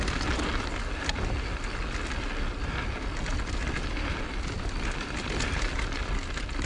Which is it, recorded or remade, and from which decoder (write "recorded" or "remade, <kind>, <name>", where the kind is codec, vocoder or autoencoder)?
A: recorded